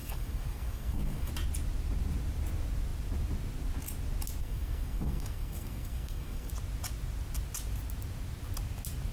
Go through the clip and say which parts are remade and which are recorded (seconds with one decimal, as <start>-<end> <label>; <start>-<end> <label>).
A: 0.0-1.3 remade; 1.3-4.4 recorded; 4.4-6.5 remade; 6.5-9.1 recorded

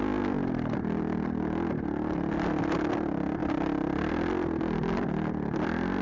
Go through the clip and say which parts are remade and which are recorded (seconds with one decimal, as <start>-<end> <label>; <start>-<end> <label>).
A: 0.0-6.0 recorded

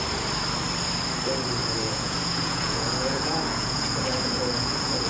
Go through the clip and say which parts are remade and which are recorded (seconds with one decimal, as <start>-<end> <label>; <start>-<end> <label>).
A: 0.0-1.6 recorded; 1.6-5.1 remade